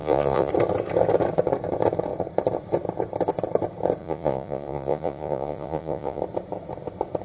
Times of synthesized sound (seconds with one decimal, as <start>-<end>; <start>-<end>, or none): 0.0-0.5; 4.0-6.2

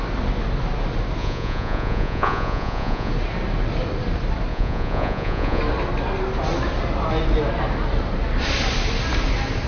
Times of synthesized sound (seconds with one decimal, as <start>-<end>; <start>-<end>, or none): 1.2-3.1; 4.5-5.6

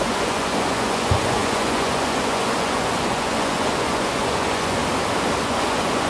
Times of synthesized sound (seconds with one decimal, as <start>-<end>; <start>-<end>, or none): 0.0-4.8; 5.4-6.1

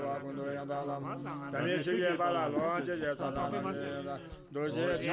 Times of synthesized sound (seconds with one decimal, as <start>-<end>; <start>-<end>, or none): none

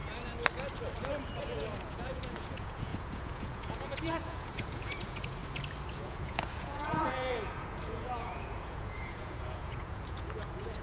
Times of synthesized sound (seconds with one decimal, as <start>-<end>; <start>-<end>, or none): 1.4-5.4; 5.9-10.8

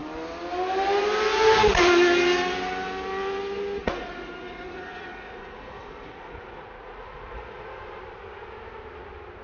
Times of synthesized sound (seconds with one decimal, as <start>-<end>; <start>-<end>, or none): 3.8-7.8

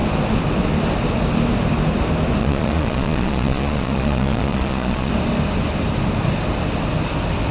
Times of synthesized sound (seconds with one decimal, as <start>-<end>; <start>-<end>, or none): 2.4-5.1